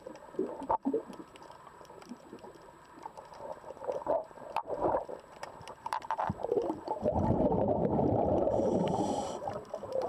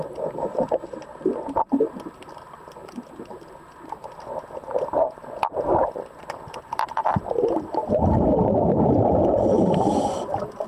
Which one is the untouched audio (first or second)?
second